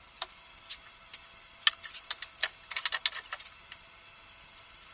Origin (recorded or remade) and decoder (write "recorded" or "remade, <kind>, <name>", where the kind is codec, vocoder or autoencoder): recorded